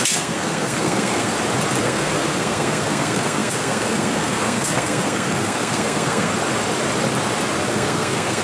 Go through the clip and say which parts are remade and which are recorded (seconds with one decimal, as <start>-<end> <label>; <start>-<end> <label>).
0.0-1.3 remade; 1.3-1.8 recorded; 1.8-6.3 remade; 6.3-7.6 recorded; 7.6-8.4 remade